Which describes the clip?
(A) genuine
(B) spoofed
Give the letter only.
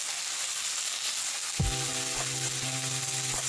A